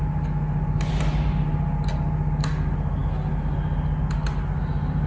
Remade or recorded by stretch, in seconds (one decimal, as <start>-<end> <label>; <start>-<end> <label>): 0.0-5.1 recorded